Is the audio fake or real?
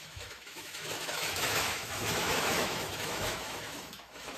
fake